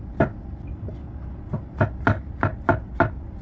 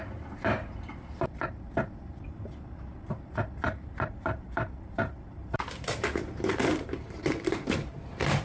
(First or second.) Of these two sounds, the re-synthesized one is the second